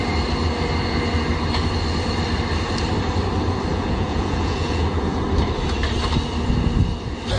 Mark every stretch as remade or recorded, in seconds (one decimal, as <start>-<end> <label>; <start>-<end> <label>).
0.0-3.7 recorded; 3.7-5.2 remade; 5.2-7.4 recorded